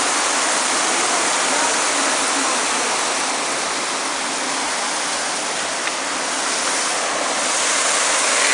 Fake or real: real